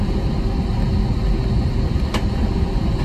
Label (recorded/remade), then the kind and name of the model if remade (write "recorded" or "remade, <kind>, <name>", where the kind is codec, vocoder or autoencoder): recorded